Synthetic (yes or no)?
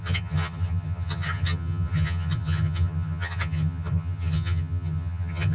yes